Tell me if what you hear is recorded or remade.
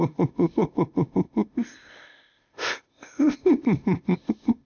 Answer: remade